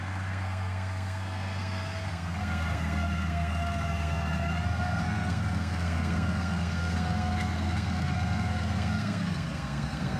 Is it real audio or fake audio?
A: fake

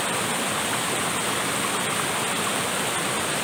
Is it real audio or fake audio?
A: real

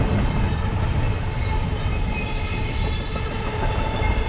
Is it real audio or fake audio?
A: real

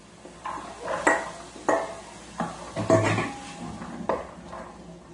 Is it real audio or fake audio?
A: real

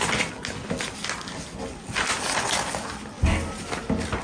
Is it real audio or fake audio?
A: real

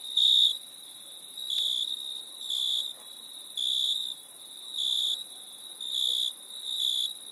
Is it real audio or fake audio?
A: real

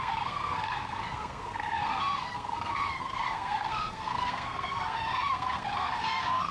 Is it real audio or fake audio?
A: fake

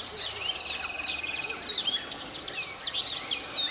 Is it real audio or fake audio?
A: real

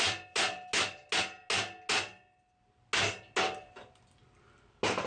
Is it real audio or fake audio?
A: real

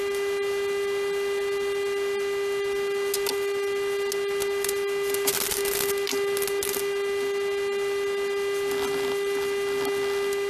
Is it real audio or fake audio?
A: real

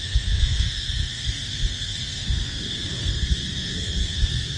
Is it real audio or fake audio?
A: fake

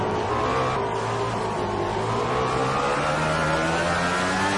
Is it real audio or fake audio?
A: real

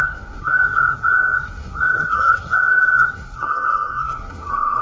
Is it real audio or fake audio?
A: fake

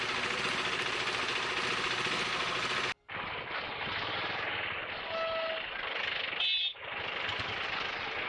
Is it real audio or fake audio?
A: real